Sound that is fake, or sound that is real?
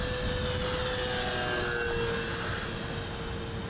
real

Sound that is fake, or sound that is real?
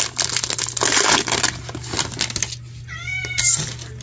real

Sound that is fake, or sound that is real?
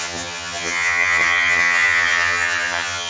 fake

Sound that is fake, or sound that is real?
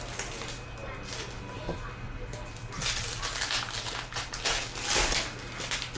real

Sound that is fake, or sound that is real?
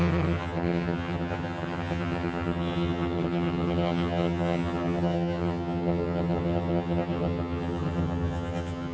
fake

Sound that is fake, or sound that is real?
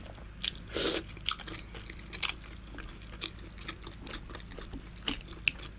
real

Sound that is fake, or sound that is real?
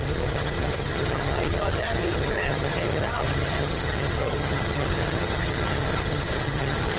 fake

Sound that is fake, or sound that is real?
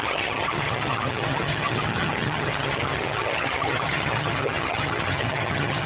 fake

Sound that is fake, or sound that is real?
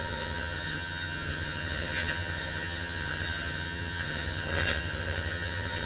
fake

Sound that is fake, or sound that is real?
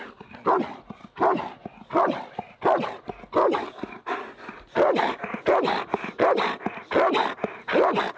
real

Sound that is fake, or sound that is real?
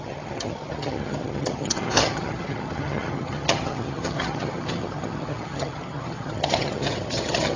fake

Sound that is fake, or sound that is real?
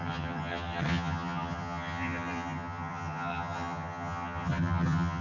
fake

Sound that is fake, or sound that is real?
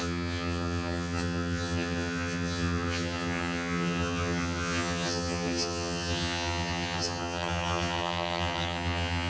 fake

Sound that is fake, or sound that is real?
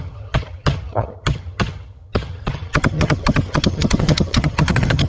fake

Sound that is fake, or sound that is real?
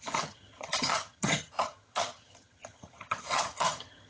fake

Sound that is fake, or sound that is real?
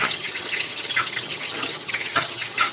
fake